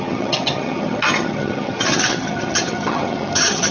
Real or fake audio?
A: fake